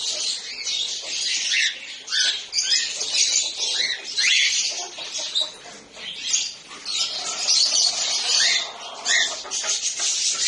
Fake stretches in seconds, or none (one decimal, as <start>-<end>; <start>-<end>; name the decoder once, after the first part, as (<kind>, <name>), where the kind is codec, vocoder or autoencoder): none